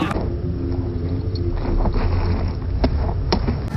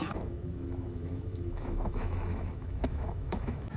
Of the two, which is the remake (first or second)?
second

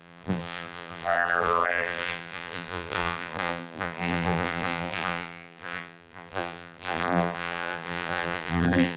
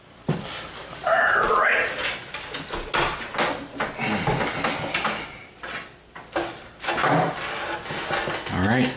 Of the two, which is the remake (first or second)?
first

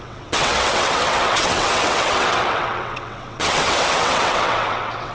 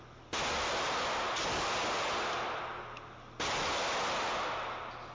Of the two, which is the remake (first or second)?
first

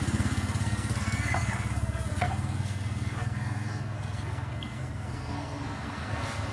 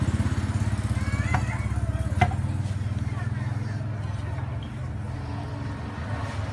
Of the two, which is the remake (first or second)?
first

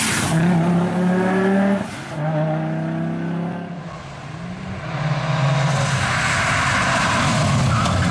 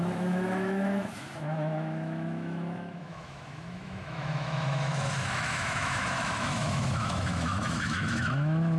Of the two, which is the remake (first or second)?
second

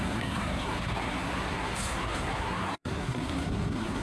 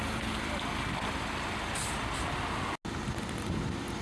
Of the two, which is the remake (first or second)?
first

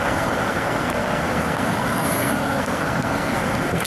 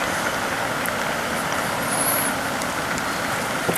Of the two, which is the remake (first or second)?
first